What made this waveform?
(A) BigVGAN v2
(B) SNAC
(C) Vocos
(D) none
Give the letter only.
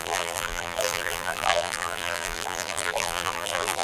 A